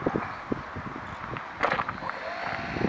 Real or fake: real